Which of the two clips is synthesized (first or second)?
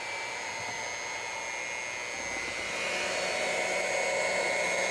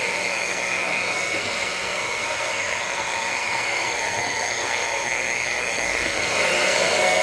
second